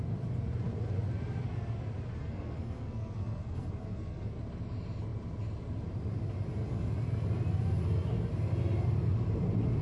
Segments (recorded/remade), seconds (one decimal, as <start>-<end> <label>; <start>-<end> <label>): 0.0-2.2 recorded; 2.2-4.4 remade; 4.4-9.8 recorded